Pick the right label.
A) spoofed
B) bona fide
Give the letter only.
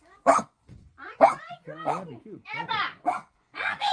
A